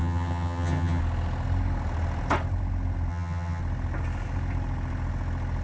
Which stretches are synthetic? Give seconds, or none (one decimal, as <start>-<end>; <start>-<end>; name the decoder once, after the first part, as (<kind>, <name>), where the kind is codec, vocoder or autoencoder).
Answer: 0.0-1.0 (vocoder, HiFi-GAN); 3.1-3.6